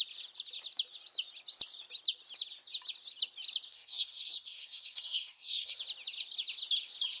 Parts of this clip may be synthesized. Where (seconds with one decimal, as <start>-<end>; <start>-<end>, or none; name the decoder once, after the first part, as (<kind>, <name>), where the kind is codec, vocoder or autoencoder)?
3.7-5.8 (codec, SNAC)